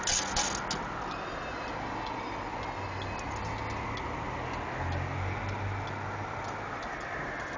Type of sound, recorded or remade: recorded